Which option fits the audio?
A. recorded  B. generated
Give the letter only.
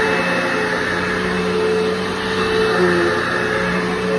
A